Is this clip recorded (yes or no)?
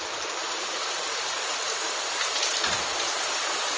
no